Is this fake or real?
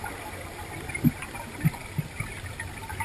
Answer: real